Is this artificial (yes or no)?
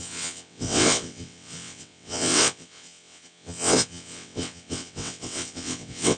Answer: yes